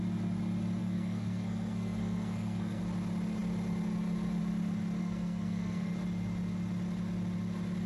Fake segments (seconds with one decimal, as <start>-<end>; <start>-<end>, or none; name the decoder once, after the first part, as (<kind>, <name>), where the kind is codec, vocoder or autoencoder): 0.8-2.8 (codec, SNAC); 5.0-5.9